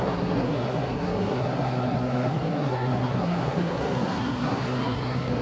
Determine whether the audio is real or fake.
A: fake